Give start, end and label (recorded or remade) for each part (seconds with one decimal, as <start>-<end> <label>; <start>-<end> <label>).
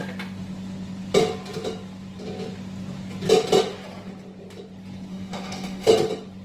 0.0-5.1 recorded; 5.1-5.9 remade; 5.9-6.4 recorded